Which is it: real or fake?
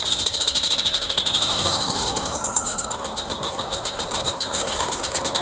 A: fake